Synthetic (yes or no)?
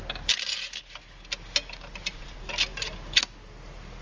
no